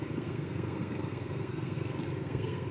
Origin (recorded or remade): remade